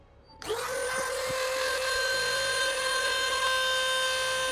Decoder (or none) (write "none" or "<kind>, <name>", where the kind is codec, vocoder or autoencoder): none